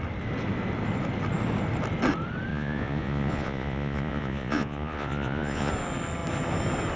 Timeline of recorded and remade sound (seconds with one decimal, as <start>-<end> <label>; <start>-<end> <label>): 0.0-2.5 recorded; 2.5-5.7 remade; 5.7-7.0 recorded